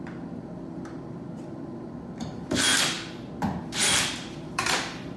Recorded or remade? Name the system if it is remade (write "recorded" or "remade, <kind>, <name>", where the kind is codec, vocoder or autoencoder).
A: remade, vocoder, BigVGAN v2